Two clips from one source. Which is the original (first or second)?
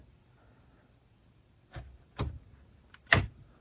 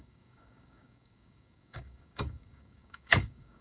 first